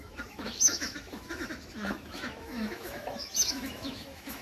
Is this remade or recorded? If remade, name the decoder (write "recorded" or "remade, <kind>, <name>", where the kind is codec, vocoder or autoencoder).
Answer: remade, autoencoder, DAC-VAE